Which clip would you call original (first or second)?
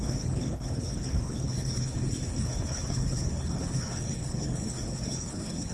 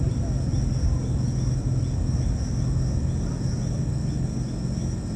second